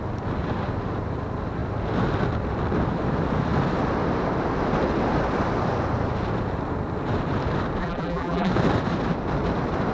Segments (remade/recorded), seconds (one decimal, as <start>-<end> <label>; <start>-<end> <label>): 0.0-7.8 recorded; 7.8-8.5 remade; 8.5-9.9 recorded